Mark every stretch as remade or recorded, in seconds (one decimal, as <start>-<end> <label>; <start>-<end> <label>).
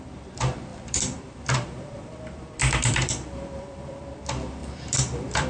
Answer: 0.0-0.7 recorded; 0.7-4.0 remade; 4.0-4.6 recorded; 4.6-5.5 remade